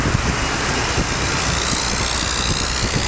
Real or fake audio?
real